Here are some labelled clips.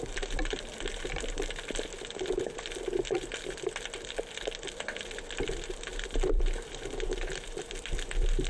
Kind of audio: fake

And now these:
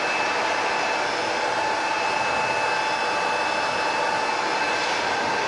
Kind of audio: real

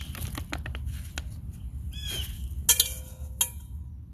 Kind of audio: real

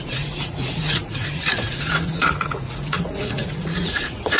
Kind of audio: fake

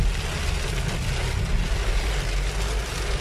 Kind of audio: real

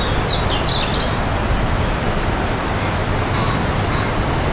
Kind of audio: real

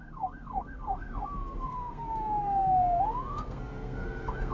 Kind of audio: fake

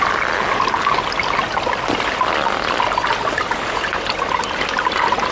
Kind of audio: real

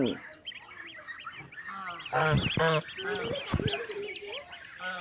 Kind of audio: real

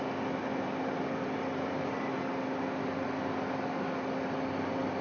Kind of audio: real